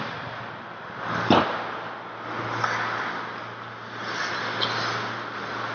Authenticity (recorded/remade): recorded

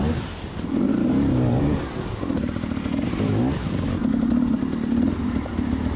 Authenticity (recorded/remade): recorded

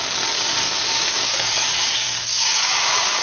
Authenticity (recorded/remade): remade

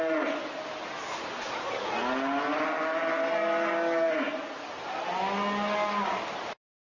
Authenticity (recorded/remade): recorded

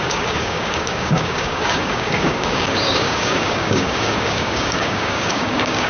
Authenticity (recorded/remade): remade